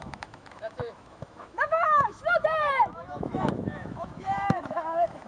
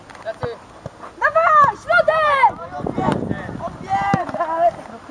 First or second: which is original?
second